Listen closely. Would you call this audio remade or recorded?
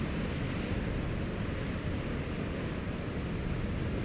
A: recorded